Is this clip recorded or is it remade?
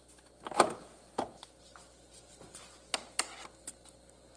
recorded